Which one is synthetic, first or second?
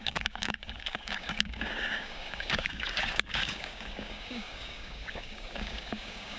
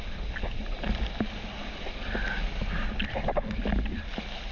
first